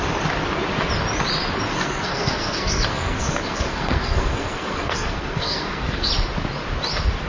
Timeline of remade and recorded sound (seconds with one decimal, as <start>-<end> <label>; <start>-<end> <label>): 0.0-1.7 recorded; 1.7-6.1 remade; 6.1-7.3 recorded